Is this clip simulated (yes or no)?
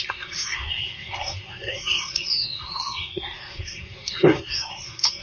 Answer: yes